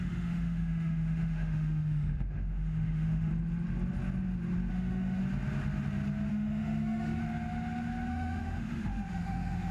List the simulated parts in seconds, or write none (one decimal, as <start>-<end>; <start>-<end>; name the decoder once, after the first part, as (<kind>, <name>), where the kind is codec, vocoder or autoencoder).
0.0-3.3 (autoencoder, DAC-VAE); 4.7-5.2; 6.3-7.2; 8.1-9.7